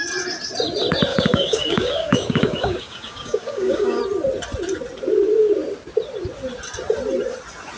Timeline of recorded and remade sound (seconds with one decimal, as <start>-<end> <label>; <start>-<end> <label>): 0.0-1.1 recorded; 1.1-4.0 remade; 4.0-7.8 recorded